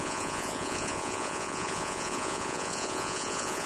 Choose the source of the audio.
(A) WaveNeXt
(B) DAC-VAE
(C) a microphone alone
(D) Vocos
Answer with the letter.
D